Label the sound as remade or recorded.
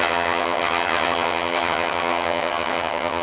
remade